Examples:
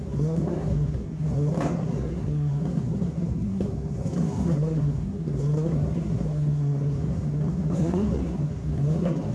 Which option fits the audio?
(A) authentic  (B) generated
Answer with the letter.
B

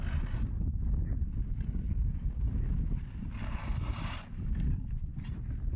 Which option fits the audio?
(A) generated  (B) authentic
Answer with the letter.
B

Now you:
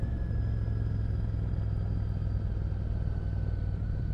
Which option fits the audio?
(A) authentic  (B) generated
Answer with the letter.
A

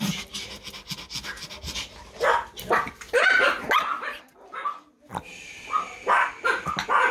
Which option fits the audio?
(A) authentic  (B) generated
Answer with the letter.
A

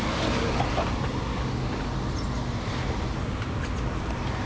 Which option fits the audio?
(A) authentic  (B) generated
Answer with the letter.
A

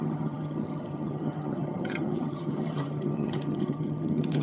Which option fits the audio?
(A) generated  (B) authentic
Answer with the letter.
A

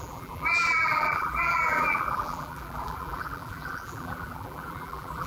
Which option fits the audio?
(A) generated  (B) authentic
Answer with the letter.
A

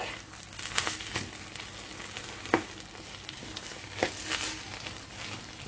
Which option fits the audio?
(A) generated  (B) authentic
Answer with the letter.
B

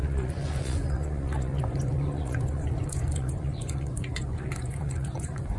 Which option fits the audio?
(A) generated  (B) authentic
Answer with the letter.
A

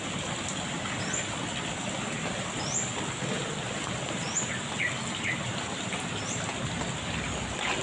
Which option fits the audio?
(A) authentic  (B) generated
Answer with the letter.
A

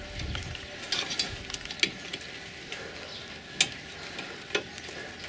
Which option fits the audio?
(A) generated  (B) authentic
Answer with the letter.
B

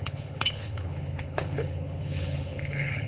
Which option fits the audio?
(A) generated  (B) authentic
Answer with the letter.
A